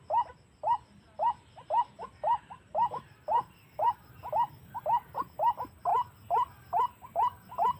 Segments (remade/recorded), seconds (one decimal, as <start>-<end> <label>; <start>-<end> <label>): 0.0-7.8 recorded